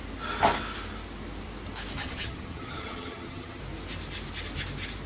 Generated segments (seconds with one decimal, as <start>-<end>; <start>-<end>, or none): 2.0-3.6